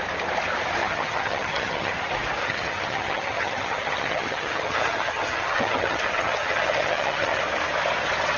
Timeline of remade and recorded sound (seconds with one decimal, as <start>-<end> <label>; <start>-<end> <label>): 0.0-0.8 recorded; 0.8-1.9 remade; 1.9-2.4 recorded; 2.4-7.4 remade; 7.4-8.4 recorded